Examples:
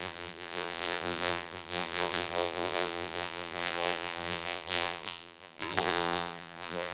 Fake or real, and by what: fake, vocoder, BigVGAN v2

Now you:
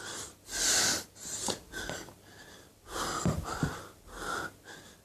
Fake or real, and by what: fake, vocoder, BigVGAN v2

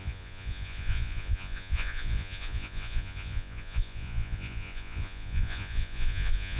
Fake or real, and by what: fake, vocoder, Vocos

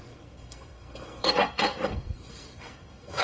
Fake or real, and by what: fake, codec, SNAC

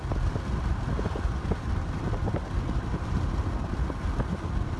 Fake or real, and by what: real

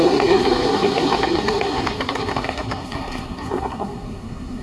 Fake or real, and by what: fake, codec, SNAC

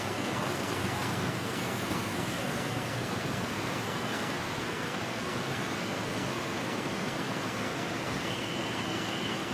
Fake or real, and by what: fake, codec, SNAC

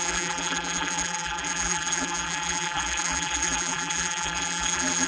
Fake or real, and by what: fake, vocoder, BigVGAN v2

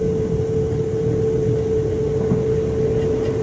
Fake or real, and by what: real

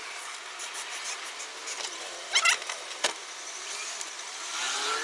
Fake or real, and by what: real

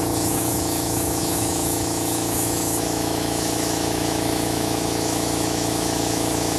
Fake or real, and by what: fake, autoencoder, DAC-VAE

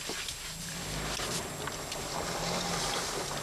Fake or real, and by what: real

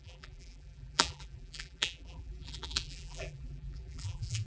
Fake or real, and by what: fake, vocoder, BigVGAN v2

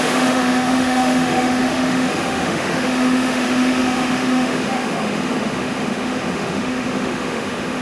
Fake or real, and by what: fake, autoencoder, DAC-VAE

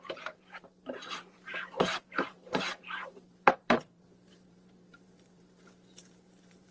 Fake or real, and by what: fake, vocoder, BigVGAN v2